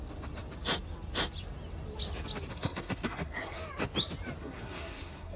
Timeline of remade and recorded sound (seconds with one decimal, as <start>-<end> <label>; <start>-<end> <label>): 0.0-2.5 recorded; 2.5-3.6 remade; 3.6-4.4 recorded; 4.4-5.4 remade